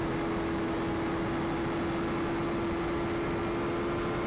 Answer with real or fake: real